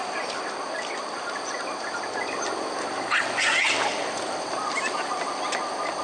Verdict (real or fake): real